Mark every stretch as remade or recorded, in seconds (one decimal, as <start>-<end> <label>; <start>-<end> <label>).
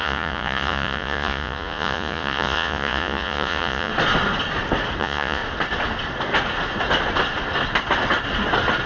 0.0-3.9 remade; 3.9-5.0 recorded; 5.0-5.4 remade; 5.4-8.9 recorded